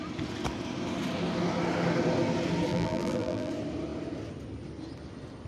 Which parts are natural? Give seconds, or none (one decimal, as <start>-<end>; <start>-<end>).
0.0-2.7; 3.5-5.5